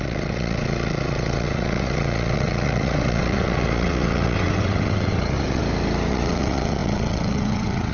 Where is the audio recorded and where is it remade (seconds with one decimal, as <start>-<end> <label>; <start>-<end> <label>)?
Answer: 0.0-5.6 remade; 5.6-6.1 recorded; 6.1-7.9 remade